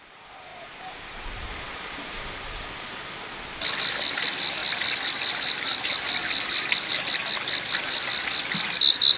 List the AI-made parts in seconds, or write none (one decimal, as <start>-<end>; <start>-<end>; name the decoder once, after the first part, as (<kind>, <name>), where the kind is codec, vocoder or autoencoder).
0.5-3.7 (vocoder, BigVGAN v2); 4.6-6.9